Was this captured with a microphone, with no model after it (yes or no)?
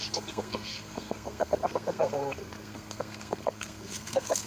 no